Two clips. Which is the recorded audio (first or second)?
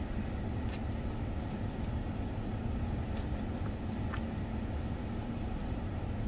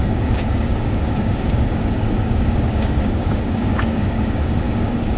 first